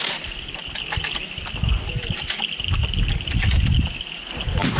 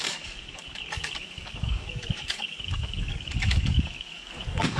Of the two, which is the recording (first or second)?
first